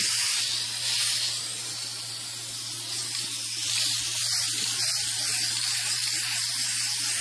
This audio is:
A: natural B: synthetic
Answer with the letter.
A